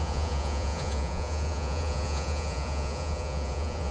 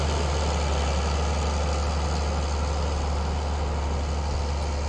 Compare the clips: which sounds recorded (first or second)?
second